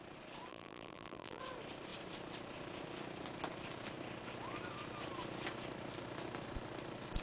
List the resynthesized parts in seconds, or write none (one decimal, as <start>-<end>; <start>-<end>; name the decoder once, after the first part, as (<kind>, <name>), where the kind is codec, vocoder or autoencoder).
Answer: 0.5-1.4 (vocoder, BigVGAN v2)